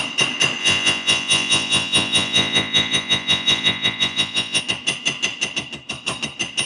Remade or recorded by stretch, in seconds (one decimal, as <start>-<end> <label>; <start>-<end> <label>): 0.0-0.6 recorded; 0.6-4.6 remade; 4.6-6.7 recorded